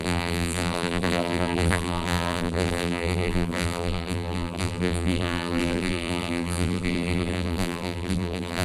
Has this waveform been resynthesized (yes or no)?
yes